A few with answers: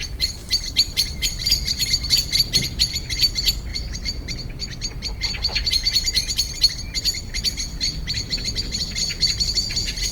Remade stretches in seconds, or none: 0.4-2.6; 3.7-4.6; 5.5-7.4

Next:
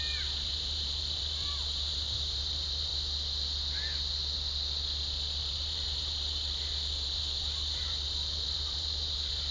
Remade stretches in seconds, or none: 0.0-2.9; 5.4-9.5

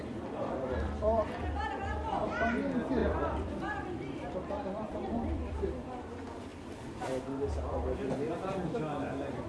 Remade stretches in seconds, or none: 0.0-1.4; 3.0-5.5; 6.5-7.2

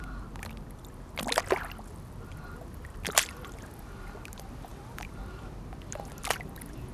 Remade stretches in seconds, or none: 2.9-3.6; 4.7-5.2

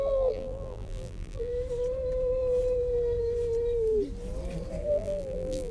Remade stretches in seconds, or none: 0.0-1.5; 4.9-5.7

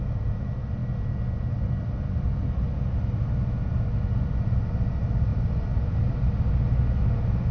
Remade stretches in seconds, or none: none

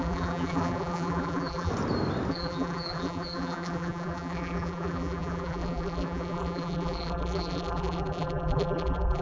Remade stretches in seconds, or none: 0.0-1.7; 2.3-9.2